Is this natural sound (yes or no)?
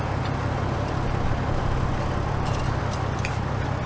yes